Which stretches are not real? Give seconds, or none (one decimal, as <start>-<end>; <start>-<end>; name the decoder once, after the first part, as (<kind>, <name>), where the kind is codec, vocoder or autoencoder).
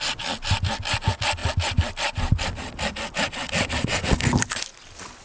none